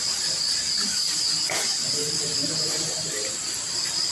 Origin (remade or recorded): recorded